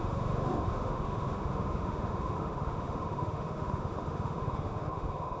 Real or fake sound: fake